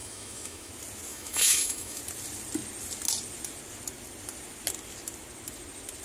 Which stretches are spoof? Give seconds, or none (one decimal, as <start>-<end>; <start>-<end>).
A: 0.0-0.7; 1.1-2.0